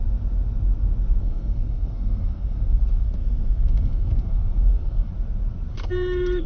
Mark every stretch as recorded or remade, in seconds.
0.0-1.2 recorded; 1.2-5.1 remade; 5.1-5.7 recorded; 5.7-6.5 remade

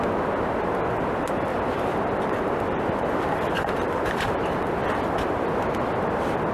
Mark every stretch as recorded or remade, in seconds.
0.0-1.5 recorded; 1.5-5.3 remade; 5.3-6.5 recorded